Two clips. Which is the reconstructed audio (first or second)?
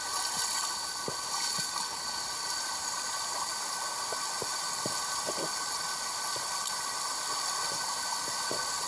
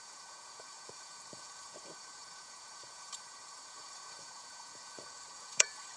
second